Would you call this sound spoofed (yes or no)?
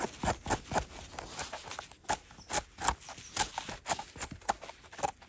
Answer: no